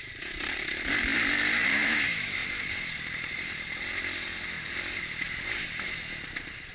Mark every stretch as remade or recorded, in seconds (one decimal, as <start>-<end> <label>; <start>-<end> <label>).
0.0-6.7 remade